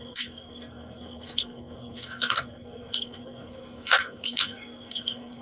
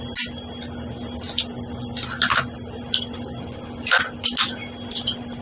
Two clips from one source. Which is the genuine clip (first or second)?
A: second